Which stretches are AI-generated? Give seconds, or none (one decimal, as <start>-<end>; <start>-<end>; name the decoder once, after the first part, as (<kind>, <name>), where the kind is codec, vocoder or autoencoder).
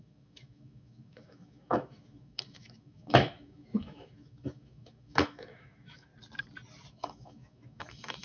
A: 0.0-6.1 (autoencoder, DAC-VAE); 6.9-8.2